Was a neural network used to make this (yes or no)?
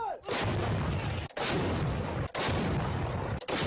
no